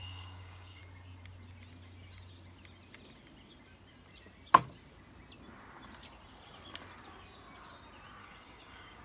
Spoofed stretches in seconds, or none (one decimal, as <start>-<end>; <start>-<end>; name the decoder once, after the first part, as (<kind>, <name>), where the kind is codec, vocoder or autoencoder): 0.0-0.8 (codec, DAC); 8.2-9.0

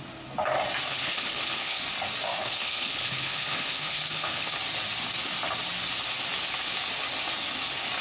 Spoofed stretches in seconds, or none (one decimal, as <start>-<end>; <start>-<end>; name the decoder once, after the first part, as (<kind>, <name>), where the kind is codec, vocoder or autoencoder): 0.9-1.8 (codec, HILCodec); 2.4-4.6